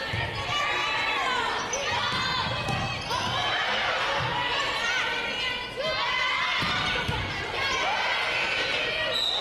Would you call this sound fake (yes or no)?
no